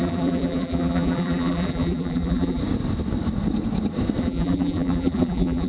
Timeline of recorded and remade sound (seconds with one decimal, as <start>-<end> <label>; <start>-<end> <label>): 0.0-2.6 remade; 2.6-4.2 recorded; 4.2-5.7 remade